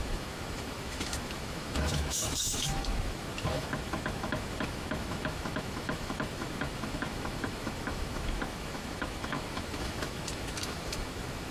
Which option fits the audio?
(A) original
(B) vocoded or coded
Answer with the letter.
B